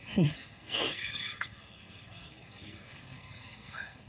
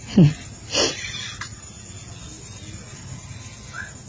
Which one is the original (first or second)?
second